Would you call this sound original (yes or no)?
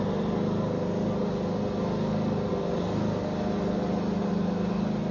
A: yes